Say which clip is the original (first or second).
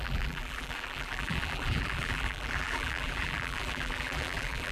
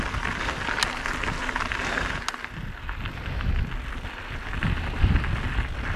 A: second